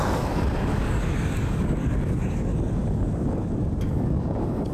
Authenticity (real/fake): fake